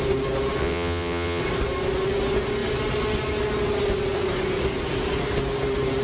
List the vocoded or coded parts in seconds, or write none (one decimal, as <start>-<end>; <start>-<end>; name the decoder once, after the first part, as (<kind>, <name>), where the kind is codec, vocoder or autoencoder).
0.6-1.4 (vocoder, WaveNeXt)